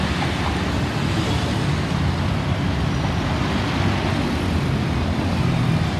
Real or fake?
real